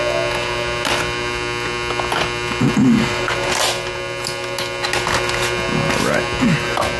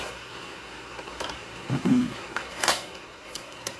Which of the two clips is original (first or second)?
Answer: first